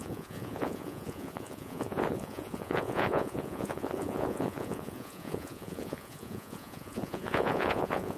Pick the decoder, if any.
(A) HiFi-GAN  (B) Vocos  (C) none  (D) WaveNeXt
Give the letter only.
B